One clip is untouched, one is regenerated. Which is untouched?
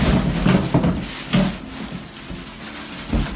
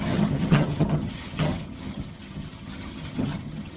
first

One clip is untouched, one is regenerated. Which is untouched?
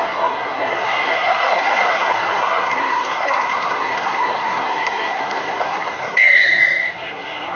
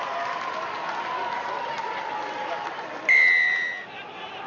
second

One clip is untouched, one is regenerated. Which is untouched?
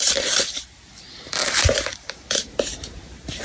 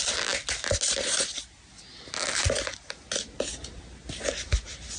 second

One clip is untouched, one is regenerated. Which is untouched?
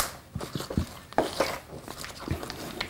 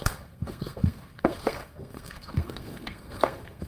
first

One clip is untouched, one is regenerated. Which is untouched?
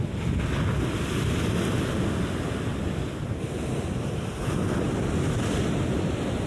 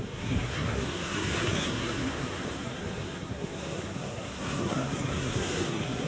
first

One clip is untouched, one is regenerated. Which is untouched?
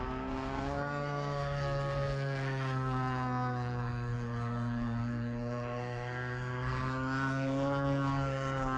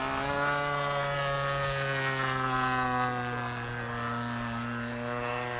second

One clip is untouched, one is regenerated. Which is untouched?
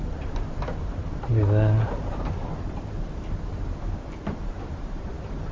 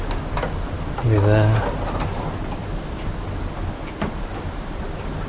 second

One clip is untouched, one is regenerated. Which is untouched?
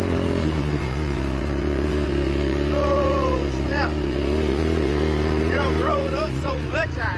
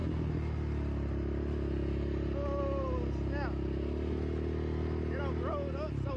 second